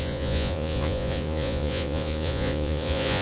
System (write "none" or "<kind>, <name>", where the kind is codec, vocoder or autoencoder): vocoder, Vocos